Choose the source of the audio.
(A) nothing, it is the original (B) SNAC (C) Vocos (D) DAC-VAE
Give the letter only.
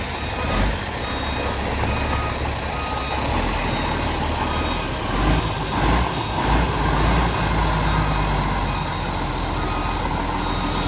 A